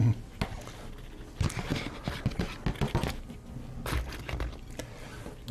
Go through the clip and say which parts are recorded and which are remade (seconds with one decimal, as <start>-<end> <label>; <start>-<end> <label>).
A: 0.0-5.5 recorded